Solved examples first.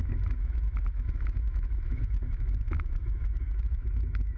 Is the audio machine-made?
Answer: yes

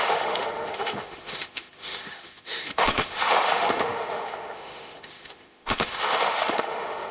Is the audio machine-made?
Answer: yes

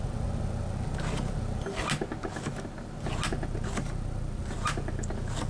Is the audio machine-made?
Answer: no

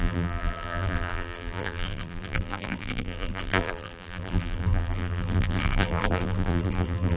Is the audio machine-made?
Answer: yes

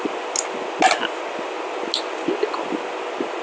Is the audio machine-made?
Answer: no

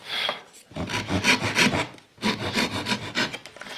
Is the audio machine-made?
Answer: no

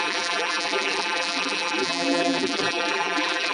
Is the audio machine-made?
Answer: yes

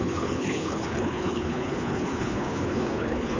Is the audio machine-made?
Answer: yes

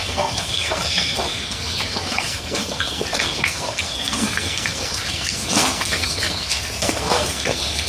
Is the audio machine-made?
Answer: yes